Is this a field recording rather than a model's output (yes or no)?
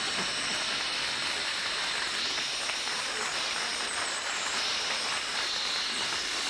yes